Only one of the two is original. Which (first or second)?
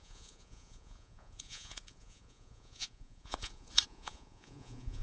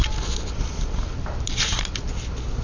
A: second